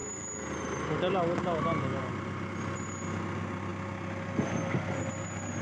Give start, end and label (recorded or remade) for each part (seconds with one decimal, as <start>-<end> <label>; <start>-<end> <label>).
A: 0.0-5.6 recorded